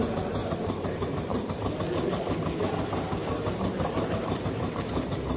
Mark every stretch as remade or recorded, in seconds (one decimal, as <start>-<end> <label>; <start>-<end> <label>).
0.0-0.4 recorded; 0.4-1.6 remade; 1.6-5.4 recorded